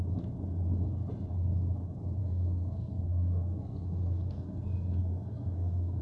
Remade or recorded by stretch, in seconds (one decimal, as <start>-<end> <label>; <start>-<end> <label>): 0.0-2.2 recorded; 2.2-6.0 remade